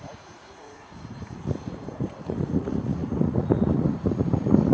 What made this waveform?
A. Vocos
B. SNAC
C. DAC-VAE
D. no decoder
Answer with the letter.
A